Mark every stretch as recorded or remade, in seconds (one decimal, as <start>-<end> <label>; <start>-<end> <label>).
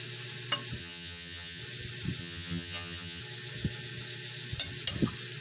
0.0-0.8 recorded; 0.8-1.6 remade; 1.6-2.2 recorded; 2.2-3.2 remade; 3.2-5.4 recorded